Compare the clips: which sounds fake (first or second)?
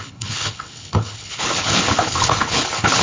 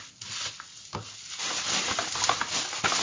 first